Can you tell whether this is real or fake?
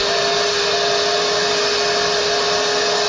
real